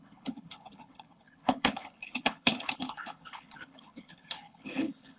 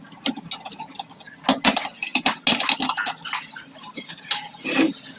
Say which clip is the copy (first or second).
first